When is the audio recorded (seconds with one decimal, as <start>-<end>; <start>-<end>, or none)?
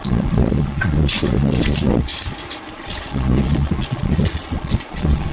2.1-2.7